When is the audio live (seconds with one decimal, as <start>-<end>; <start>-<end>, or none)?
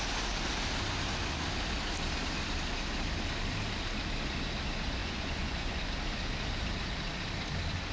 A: 0.0-5.0; 5.9-7.9